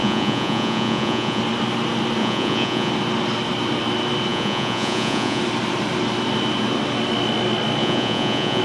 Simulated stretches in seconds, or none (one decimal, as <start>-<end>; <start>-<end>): 0.0-1.4; 2.2-2.9; 4.3-5.4; 7.8-8.6

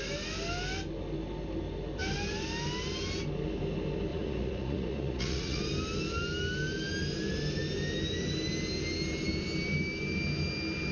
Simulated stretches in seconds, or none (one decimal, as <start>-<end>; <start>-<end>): 4.1-5.6

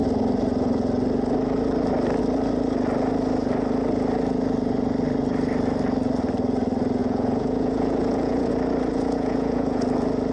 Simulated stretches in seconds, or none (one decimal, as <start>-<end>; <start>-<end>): 7.0-8.5; 8.9-9.8

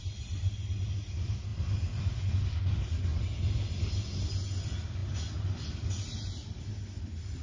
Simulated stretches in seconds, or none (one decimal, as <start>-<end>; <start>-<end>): none

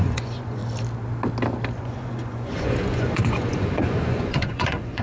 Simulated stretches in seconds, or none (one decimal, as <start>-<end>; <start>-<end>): 0.0-0.6; 1.7-5.0

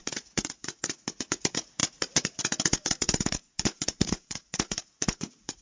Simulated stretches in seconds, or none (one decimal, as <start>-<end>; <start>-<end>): 0.0-5.6

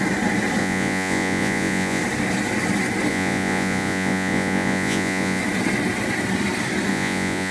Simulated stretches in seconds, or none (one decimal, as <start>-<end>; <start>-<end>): 0.6-2.0; 3.1-5.4; 6.9-7.5